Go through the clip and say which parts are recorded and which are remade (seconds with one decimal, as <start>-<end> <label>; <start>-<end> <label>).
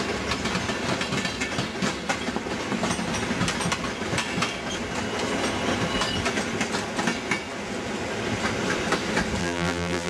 0.0-9.4 recorded; 9.4-10.1 remade